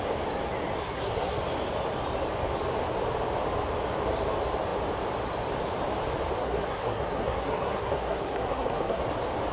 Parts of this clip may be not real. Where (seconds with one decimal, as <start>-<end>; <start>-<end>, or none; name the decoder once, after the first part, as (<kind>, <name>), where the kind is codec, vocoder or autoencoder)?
0.8-1.4 (codec, SNAC); 6.4-9.0